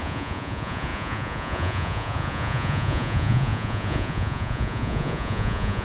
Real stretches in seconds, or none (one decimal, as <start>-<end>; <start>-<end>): none